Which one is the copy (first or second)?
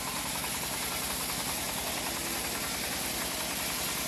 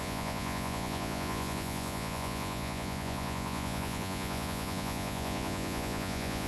second